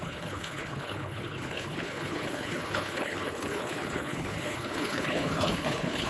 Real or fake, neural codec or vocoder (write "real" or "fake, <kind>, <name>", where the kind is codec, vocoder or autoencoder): fake, codec, HILCodec